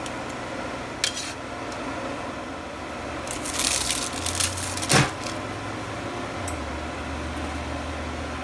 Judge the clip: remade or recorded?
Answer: recorded